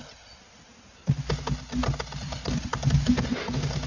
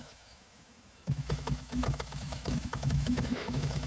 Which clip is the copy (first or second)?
second